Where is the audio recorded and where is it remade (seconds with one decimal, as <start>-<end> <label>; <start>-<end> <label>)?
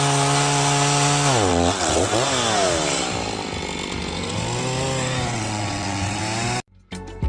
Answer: 0.0-1.5 recorded; 1.5-2.1 remade; 2.1-5.3 recorded; 5.3-6.2 remade; 6.2-7.3 recorded